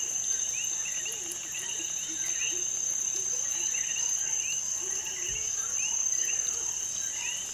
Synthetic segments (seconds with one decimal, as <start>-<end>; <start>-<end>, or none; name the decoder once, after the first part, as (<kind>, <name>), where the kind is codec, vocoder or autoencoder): none